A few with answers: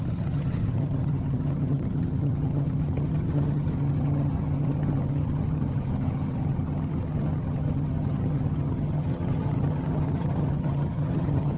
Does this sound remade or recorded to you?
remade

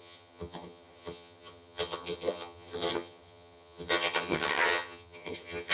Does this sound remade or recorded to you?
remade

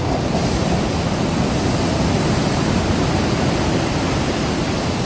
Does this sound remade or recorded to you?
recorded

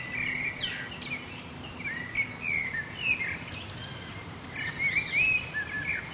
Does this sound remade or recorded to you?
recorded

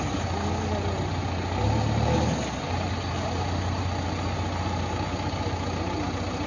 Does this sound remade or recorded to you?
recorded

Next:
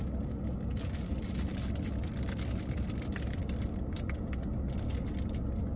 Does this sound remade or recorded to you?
recorded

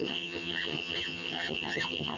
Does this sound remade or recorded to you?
remade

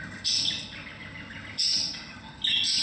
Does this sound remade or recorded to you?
recorded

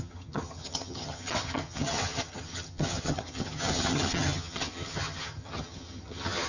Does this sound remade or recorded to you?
remade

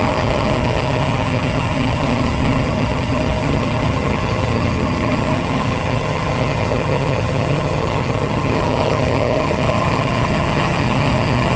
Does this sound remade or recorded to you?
remade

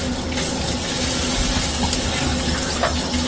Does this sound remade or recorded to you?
recorded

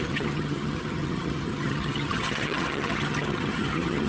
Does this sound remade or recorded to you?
remade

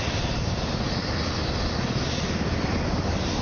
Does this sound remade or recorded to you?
recorded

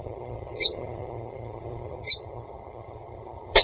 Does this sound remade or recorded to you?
remade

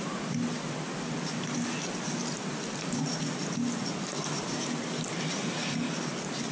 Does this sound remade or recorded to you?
recorded